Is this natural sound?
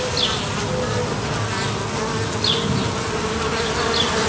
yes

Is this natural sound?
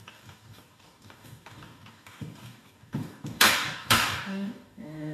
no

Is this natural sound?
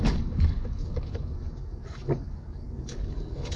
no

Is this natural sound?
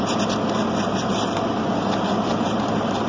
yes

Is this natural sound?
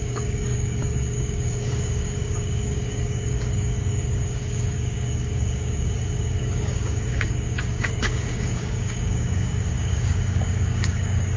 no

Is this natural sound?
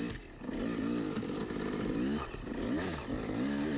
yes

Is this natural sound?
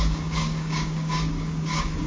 no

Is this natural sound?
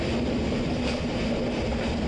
yes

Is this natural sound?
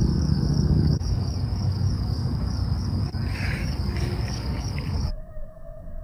no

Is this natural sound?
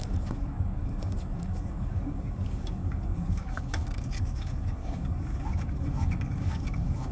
no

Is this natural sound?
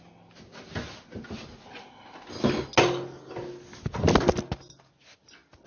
yes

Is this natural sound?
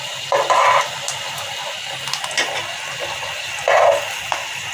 yes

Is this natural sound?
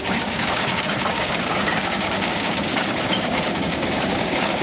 no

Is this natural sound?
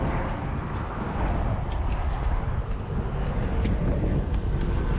yes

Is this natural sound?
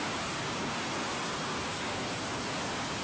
yes